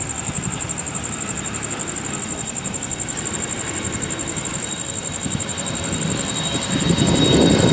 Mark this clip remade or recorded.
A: remade